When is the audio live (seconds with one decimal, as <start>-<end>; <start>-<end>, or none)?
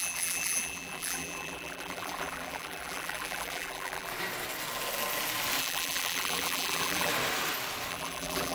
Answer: 4.1-5.6; 7.1-7.9